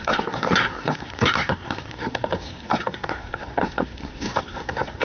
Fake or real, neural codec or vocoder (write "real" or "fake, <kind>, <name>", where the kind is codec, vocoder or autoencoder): fake, codec, SNAC